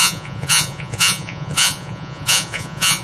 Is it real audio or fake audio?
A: fake